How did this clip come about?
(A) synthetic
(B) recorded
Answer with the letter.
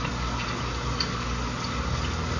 B